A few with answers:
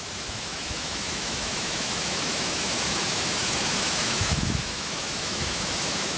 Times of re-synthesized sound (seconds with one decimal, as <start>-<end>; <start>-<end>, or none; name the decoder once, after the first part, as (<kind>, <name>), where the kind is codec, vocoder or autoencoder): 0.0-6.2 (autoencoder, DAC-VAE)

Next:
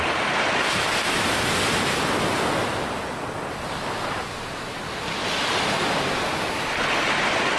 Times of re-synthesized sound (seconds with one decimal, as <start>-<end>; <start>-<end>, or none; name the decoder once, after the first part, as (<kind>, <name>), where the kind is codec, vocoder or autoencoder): none

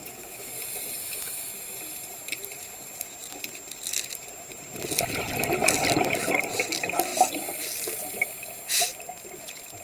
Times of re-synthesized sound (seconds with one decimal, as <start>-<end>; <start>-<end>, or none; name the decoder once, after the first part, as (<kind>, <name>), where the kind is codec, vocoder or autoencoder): 0.0-0.5 (autoencoder, DAC-VAE); 1.0-1.5

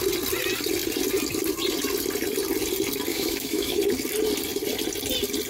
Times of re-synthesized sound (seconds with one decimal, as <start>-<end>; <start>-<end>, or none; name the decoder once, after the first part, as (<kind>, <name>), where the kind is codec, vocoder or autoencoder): 3.1-3.8 (autoencoder, DAC-VAE)

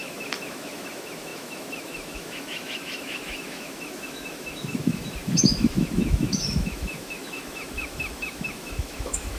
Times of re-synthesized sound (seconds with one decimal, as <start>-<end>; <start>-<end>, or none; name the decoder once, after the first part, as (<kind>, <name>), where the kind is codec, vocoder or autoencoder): 0.0-9.4 (autoencoder, DAC-VAE)